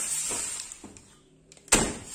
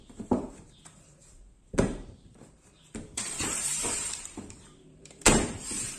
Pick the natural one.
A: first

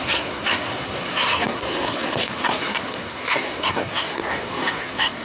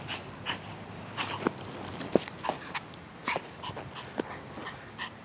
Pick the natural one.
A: second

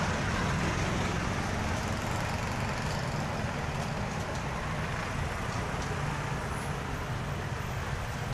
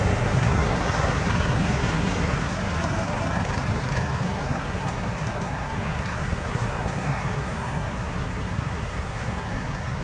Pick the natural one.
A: first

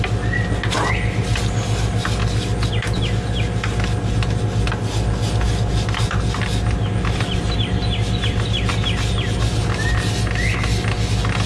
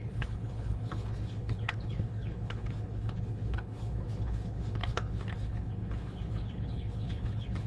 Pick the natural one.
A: first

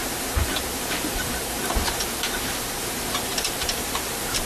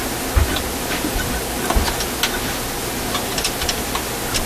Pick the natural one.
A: second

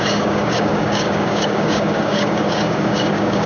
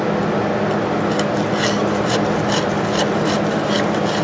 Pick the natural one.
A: second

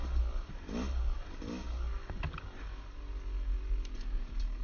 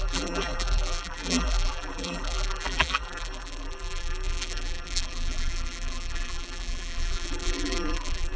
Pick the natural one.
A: first